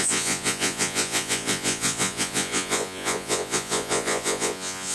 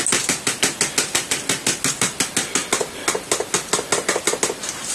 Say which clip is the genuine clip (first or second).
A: second